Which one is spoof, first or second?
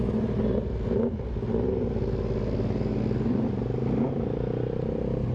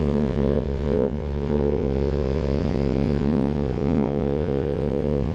second